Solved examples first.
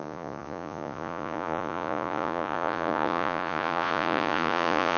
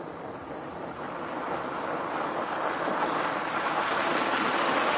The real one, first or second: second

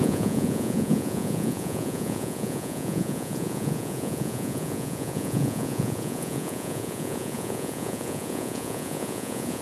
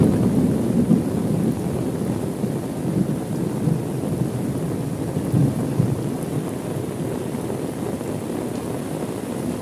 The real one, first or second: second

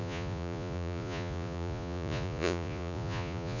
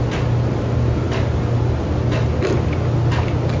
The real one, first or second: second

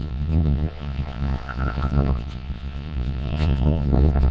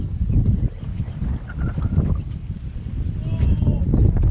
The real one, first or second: second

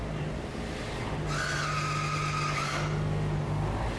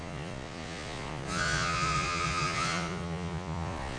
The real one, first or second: first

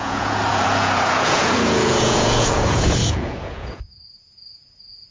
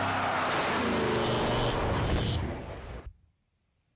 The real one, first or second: second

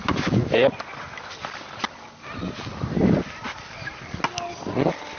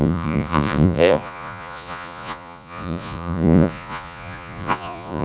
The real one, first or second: first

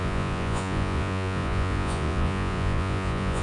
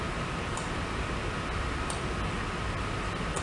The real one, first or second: second